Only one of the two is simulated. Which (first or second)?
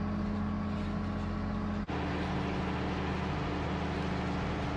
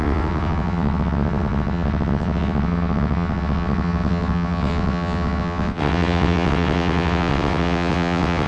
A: second